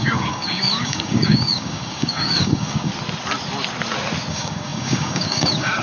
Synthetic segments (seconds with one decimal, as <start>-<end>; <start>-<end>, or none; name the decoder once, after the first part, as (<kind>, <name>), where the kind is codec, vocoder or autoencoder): 0.0-2.9 (codec, DAC); 4.3-5.8